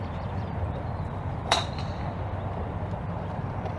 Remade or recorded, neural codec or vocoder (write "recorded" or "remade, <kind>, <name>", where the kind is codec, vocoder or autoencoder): remade, vocoder, BigVGAN v2